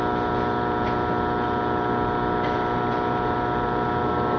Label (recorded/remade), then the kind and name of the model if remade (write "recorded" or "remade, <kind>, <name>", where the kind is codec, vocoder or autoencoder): recorded